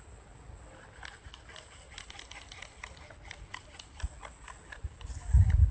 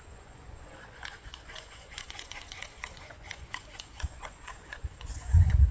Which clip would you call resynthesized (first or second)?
second